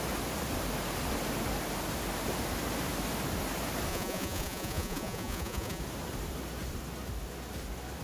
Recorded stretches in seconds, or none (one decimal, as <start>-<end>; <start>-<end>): 0.0-3.9; 5.8-8.0